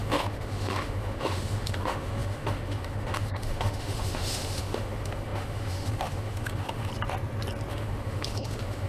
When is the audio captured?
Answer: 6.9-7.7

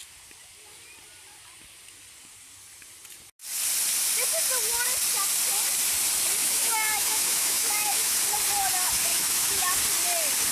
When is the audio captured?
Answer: 0.0-6.4; 8.2-9.1; 9.7-10.5

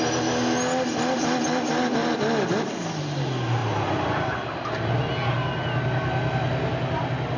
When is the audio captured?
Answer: 0.0-7.4

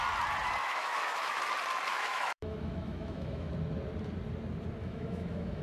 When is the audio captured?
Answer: 0.0-0.6; 1.4-1.9; 3.5-4.8

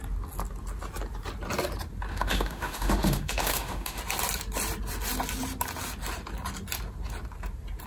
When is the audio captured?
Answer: 0.0-2.1; 4.0-7.9